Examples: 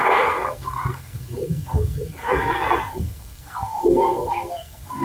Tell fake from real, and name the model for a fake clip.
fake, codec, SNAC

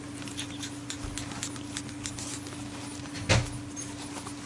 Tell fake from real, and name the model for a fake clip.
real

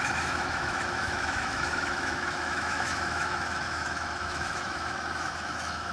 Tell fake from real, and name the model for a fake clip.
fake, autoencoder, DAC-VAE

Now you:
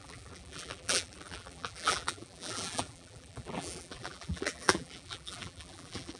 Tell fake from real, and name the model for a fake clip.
fake, vocoder, BigVGAN v2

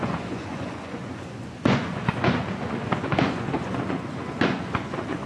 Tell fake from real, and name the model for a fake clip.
fake, vocoder, Vocos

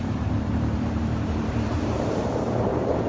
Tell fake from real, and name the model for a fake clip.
fake, vocoder, BigVGAN v2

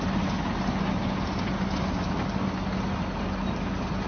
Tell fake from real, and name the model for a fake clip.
real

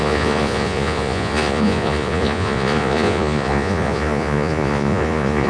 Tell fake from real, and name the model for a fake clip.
fake, vocoder, Vocos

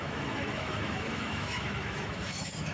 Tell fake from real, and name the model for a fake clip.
fake, autoencoder, DAC-VAE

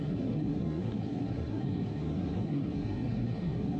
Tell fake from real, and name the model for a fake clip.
fake, codec, SNAC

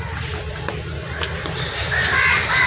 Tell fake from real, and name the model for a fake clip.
real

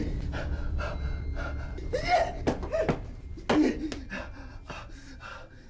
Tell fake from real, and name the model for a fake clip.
real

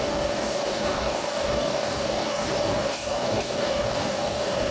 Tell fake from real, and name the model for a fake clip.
fake, codec, DAC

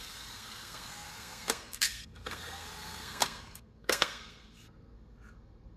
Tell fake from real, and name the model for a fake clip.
fake, codec, SNAC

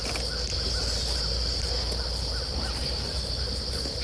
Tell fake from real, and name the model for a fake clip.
real